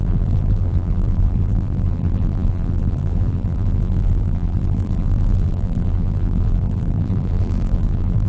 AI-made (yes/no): yes